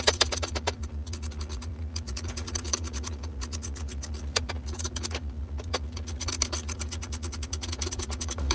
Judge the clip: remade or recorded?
remade